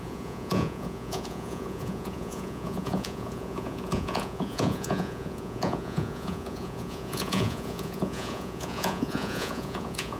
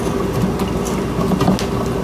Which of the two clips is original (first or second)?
second